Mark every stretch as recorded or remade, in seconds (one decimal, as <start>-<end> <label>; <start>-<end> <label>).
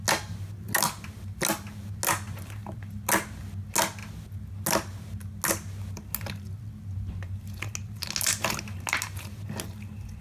0.0-10.2 recorded